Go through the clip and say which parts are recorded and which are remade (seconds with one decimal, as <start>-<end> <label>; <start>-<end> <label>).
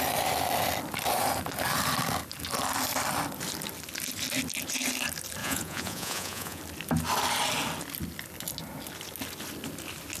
0.0-5.4 recorded; 5.4-6.6 remade; 6.6-10.2 recorded